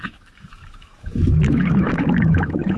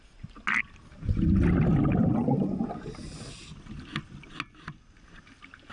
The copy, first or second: first